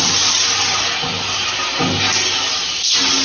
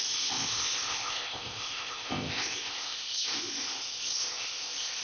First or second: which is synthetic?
second